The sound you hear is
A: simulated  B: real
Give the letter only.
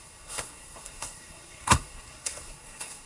A